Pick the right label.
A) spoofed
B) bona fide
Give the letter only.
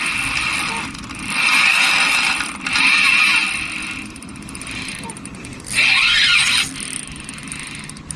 B